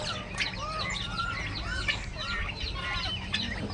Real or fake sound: real